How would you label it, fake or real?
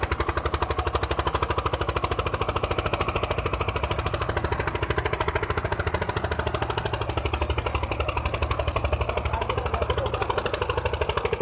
real